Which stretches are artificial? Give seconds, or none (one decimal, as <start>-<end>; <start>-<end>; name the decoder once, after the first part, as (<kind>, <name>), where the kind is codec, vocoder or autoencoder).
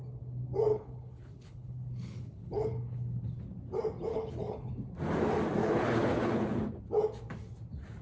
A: 0.7-3.4 (codec, HILCodec); 4.1-4.7; 5.6-6.6